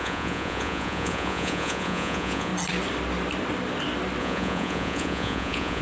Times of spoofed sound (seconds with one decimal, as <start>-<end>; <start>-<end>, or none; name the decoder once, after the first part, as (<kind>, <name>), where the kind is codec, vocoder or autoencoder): 0.0-2.5 (vocoder, Vocos); 4.2-5.8